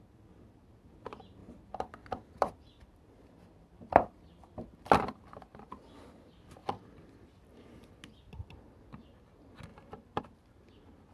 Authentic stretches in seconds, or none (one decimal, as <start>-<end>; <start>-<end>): 0.0-1.4; 4.9-9.7; 10.2-11.1